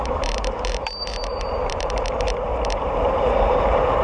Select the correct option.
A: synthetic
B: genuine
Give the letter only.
A